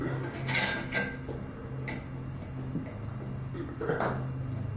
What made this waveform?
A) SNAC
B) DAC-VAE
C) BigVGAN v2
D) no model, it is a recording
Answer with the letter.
D